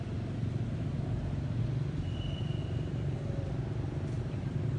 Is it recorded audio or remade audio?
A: recorded